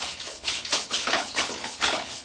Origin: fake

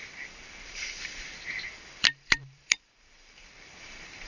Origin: fake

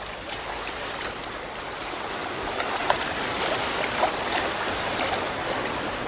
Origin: fake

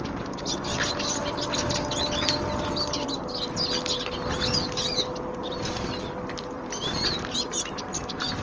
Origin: real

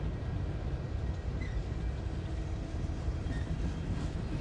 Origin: real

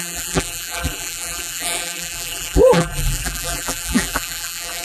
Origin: fake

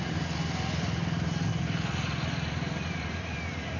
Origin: real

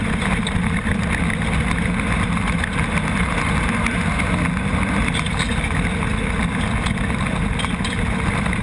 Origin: real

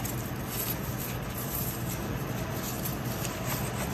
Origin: real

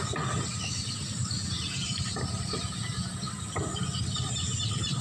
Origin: real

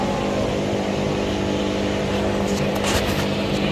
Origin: real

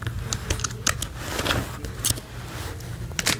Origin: real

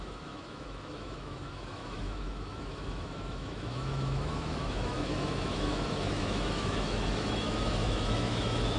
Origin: fake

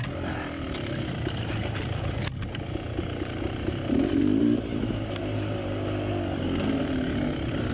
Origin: real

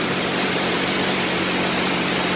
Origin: fake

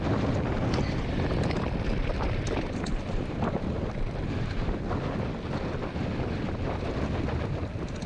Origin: real